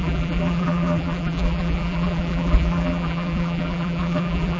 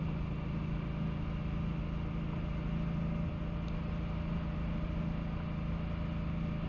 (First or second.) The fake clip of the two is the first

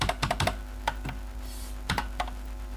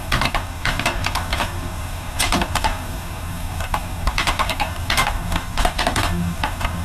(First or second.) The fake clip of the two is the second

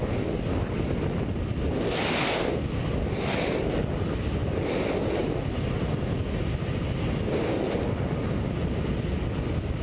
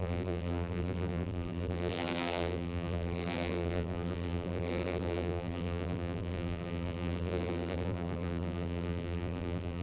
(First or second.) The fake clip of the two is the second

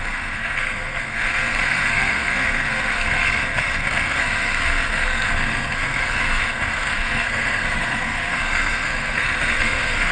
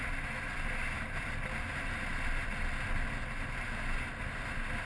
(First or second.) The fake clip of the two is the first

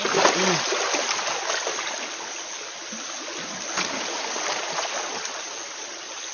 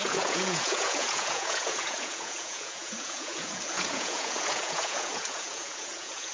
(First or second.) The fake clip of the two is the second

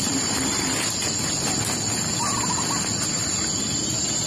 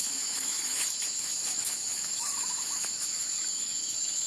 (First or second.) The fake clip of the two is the second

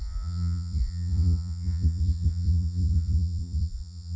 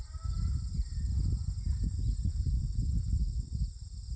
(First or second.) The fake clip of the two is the first